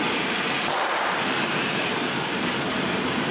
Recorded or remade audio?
remade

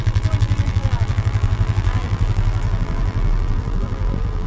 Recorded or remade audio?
remade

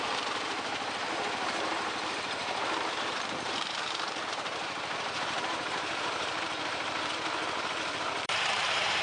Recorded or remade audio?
remade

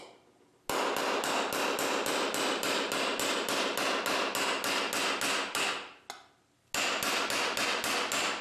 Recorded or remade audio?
recorded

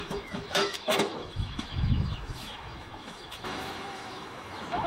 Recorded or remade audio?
remade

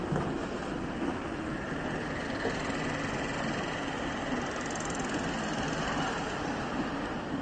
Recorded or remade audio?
recorded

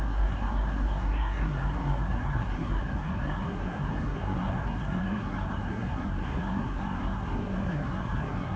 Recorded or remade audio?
remade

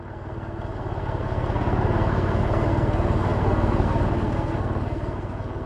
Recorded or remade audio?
remade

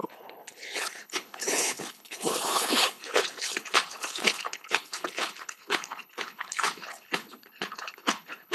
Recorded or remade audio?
remade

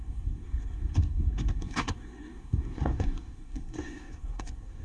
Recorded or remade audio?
remade